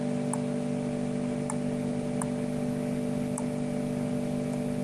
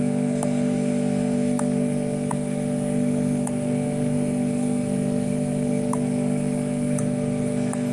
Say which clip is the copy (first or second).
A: second